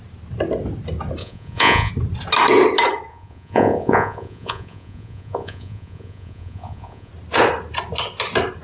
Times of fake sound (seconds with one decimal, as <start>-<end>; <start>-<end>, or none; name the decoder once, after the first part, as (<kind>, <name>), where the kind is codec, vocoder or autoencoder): 1.2-1.9 (vocoder, Vocos); 3.1-7.1

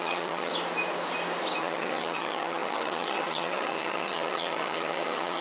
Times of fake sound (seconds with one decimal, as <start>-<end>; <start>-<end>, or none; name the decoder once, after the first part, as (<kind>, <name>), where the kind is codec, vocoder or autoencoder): 0.0-0.5 (vocoder, HiFi-GAN); 1.6-5.4

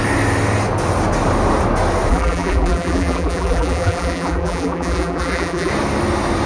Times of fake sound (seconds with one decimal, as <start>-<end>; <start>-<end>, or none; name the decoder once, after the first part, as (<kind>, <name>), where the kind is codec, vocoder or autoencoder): 2.1-5.7 (vocoder, BigVGAN v2)